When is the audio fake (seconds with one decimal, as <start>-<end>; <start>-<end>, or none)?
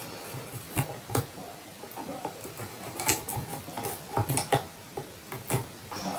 2.2-3.2